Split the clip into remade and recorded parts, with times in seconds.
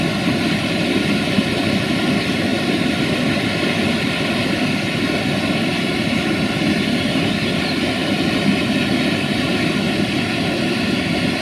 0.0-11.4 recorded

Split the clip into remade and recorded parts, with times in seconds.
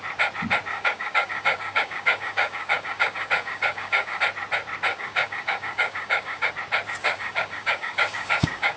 0.0-0.7 recorded; 0.7-4.2 remade; 4.2-4.9 recorded; 4.9-6.5 remade; 6.5-7.0 recorded; 7.0-8.8 remade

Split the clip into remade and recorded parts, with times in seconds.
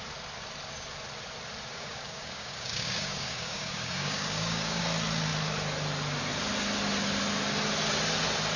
0.0-1.7 recorded; 1.7-4.8 remade; 4.8-8.6 recorded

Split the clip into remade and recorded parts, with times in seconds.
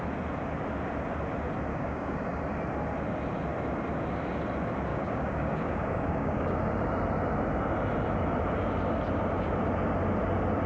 0.0-1.7 recorded; 1.7-2.4 remade; 2.4-4.9 recorded; 4.9-6.6 remade; 6.6-10.7 recorded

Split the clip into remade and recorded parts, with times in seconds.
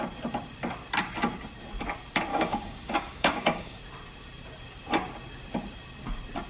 0.0-2.3 recorded; 2.3-3.8 remade; 3.8-6.5 recorded